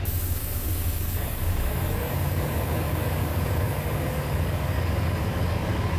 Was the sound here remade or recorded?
remade